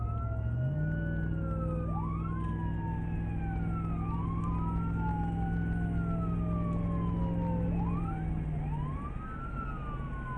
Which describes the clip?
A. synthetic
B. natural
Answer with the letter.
B